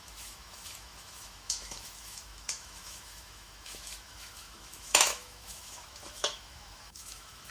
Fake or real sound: fake